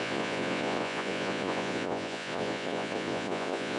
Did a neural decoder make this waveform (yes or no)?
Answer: yes